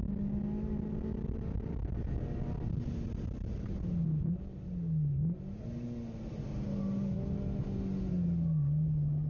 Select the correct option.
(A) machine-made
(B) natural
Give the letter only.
B